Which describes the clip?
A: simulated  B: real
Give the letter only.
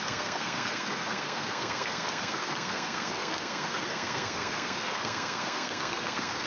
A